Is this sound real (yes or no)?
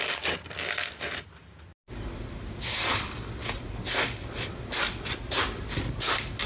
yes